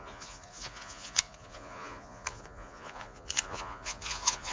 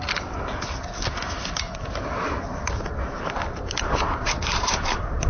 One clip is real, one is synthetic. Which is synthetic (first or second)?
first